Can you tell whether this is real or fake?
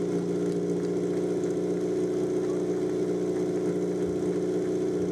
real